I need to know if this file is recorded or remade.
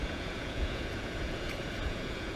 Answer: remade